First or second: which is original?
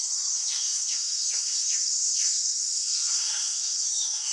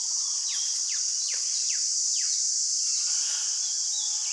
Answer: second